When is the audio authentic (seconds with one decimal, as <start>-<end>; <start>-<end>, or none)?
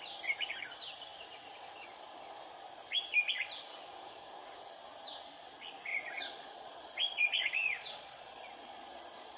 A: 0.0-5.9